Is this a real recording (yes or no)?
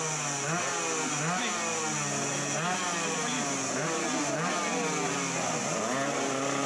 yes